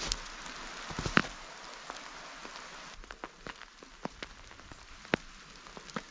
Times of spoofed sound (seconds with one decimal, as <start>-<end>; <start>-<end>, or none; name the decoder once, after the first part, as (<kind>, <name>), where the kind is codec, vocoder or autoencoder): none